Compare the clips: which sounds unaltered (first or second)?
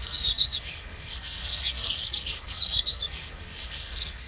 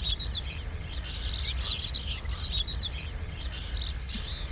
second